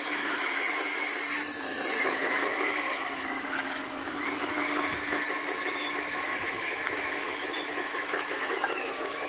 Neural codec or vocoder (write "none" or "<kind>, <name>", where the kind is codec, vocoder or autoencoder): autoencoder, DAC-VAE